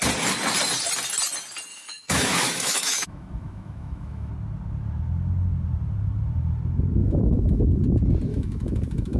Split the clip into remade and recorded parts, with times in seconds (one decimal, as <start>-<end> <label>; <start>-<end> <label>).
0.0-1.7 recorded; 1.7-4.3 remade; 4.3-7.0 recorded; 7.0-7.6 remade; 7.6-8.3 recorded; 8.3-9.2 remade

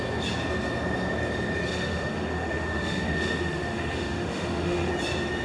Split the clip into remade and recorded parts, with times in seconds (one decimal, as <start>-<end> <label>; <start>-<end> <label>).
0.0-1.7 recorded; 1.7-4.9 remade; 4.9-5.4 recorded

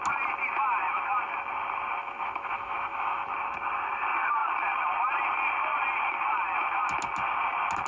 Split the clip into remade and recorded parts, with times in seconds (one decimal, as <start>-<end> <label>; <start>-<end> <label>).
0.0-2.0 recorded; 2.0-3.2 remade; 3.2-7.9 recorded

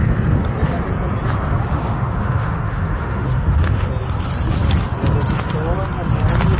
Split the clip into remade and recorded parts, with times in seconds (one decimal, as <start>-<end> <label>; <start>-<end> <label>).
0.0-1.7 recorded; 1.7-3.9 remade; 3.9-6.6 recorded

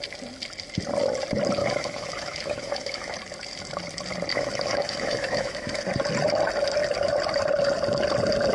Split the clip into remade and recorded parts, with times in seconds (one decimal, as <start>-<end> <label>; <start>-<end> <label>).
0.0-1.6 recorded; 1.6-3.1 remade; 3.1-4.3 recorded; 4.3-5.8 remade; 5.8-8.5 recorded

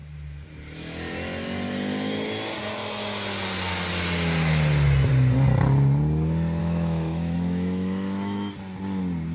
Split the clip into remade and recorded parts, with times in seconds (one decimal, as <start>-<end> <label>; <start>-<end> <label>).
0.0-6.6 recorded; 6.6-8.5 remade; 8.5-9.3 recorded

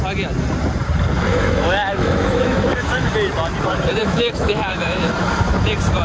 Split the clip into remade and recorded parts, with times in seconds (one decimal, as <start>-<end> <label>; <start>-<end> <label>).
0.0-1.3 recorded; 1.3-3.1 remade; 3.1-4.0 recorded; 4.0-5.1 remade; 5.1-6.0 recorded

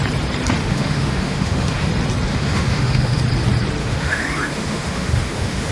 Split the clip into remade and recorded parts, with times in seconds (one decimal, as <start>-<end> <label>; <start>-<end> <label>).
0.0-0.6 recorded; 0.6-1.9 remade; 1.9-2.3 recorded; 2.3-3.2 remade; 3.2-3.8 recorded; 3.8-5.7 remade